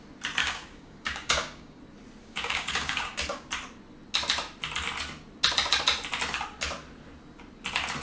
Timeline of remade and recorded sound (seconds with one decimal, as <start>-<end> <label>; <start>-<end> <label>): 0.0-0.4 recorded; 0.4-1.8 remade; 1.8-2.2 recorded; 2.2-3.5 remade; 3.5-8.0 recorded

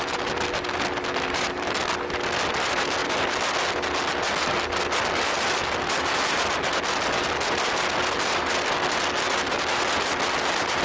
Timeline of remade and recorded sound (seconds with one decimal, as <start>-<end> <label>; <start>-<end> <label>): 0.0-10.8 recorded

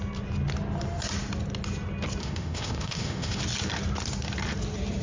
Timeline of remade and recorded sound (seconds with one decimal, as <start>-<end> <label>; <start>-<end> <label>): 0.0-2.2 recorded; 2.2-3.4 remade; 3.4-5.0 recorded